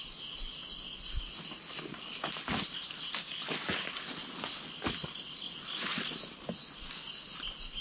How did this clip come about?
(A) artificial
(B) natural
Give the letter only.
B